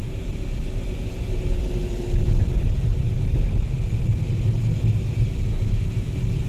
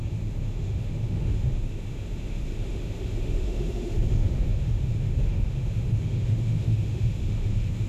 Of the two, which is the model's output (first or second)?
second